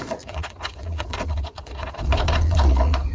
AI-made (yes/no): yes